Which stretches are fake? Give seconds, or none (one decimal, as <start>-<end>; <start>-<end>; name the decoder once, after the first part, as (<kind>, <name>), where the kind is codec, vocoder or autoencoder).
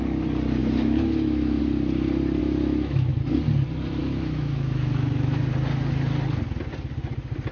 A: 0.6-1.6 (autoencoder, DAC-VAE); 2.4-3.1; 4.0-5.4